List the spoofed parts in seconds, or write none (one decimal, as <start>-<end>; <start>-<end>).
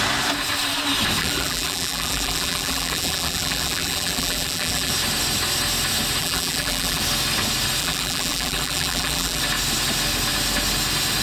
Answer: 1.2-4.9; 6.2-7.0; 7.8-9.4